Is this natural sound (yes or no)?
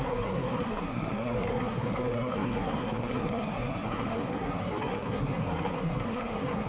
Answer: no